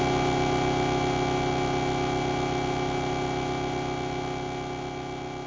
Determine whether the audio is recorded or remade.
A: recorded